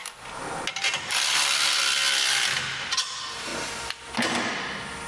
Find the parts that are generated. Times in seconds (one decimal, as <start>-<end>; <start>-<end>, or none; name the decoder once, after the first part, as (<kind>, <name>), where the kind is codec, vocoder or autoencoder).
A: none